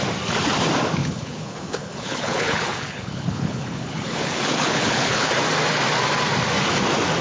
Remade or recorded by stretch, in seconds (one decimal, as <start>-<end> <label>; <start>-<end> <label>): 0.0-1.0 recorded; 1.0-5.3 remade; 5.3-7.2 recorded